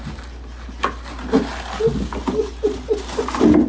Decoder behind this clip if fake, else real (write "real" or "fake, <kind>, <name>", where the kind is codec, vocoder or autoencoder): real